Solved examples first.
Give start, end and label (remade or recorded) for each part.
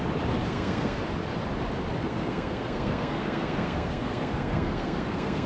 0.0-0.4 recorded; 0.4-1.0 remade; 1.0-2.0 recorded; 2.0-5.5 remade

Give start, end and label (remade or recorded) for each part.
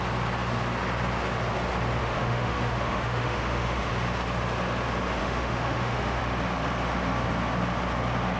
0.0-2.0 recorded; 2.0-3.9 remade; 3.9-5.2 recorded; 5.2-6.2 remade; 6.2-8.4 recorded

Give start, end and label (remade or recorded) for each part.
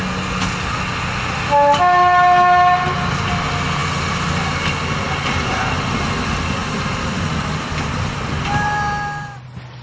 0.0-9.8 recorded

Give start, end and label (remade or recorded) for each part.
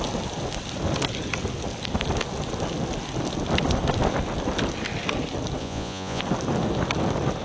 0.0-5.6 recorded; 5.6-6.2 remade; 6.2-7.4 recorded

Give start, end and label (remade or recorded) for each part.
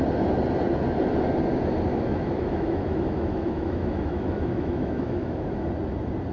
0.0-1.9 recorded; 1.9-5.7 remade; 5.7-6.3 recorded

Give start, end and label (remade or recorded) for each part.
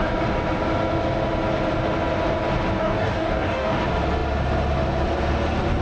0.0-2.8 recorded; 2.8-3.8 remade; 3.8-5.8 recorded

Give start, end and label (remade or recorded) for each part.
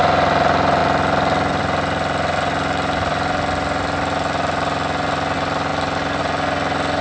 0.0-7.0 recorded